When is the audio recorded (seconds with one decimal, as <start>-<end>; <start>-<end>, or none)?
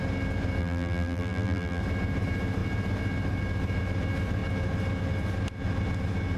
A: 0.0-0.6; 1.8-6.4